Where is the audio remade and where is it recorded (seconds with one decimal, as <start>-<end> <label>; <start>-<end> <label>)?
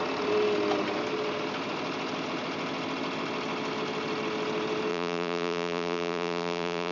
0.0-4.9 recorded; 4.9-6.9 remade